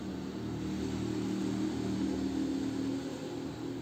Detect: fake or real real